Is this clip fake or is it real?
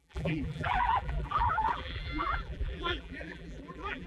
fake